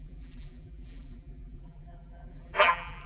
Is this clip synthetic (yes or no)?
yes